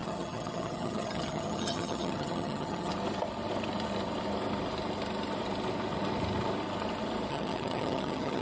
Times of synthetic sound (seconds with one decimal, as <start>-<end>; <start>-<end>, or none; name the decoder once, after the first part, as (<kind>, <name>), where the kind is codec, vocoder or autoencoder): 0.0-2.9 (vocoder, HiFi-GAN); 7.3-8.4